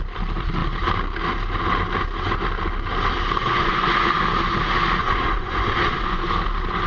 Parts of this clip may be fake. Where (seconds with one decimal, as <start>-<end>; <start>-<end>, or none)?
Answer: 3.4-4.1; 5.0-6.3